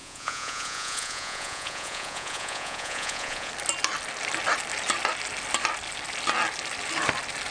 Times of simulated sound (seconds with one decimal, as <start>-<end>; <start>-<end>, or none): 0.0-3.5